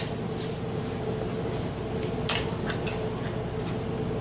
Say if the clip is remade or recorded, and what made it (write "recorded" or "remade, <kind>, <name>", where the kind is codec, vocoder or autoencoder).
recorded